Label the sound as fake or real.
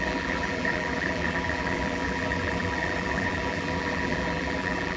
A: fake